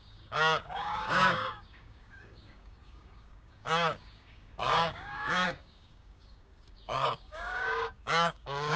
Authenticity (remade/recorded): remade